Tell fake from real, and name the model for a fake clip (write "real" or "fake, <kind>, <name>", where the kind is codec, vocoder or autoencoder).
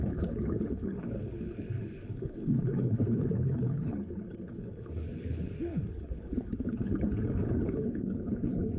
fake, codec, HILCodec